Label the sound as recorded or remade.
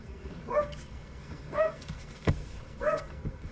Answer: remade